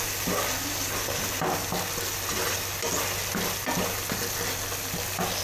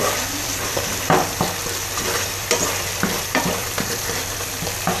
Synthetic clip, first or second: second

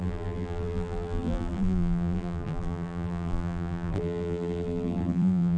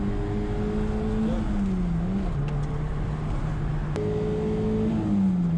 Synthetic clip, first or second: first